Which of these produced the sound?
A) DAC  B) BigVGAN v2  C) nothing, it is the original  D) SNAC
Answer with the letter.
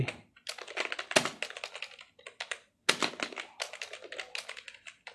C